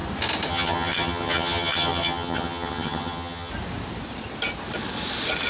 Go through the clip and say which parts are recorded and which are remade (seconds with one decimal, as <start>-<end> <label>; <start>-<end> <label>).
0.0-0.5 recorded; 0.5-3.5 remade; 3.5-5.5 recorded